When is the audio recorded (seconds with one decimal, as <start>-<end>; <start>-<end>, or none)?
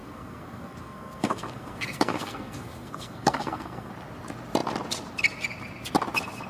3.9-6.5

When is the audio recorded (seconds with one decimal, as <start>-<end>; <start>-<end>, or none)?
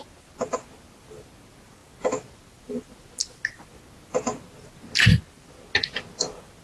0.0-6.6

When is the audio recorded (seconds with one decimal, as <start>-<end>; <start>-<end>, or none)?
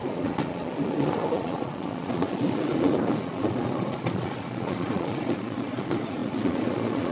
none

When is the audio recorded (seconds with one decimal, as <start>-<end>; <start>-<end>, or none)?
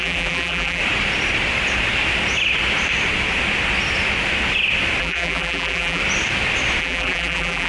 0.8-5.0; 6.0-6.8